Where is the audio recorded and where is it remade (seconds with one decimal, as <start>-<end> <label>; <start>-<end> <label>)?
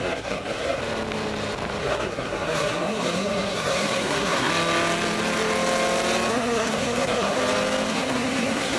0.0-0.8 remade; 0.8-1.8 recorded; 1.8-4.5 remade; 4.5-6.3 recorded; 6.3-7.4 remade; 7.4-7.9 recorded; 7.9-8.8 remade